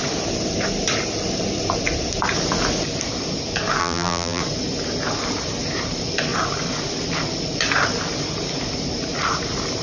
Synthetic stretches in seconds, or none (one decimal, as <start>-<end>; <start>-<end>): 3.8-4.4